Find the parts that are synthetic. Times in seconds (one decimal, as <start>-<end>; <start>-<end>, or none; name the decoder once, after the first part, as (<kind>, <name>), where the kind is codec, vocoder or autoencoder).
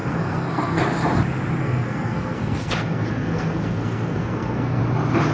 0.0-0.8 (codec, SNAC); 1.6-4.8